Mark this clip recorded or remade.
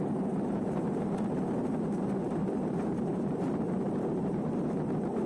remade